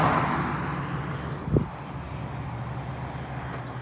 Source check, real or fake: real